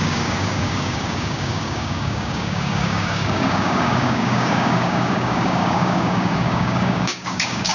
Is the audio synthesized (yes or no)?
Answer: yes